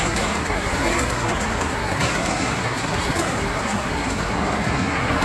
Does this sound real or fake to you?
fake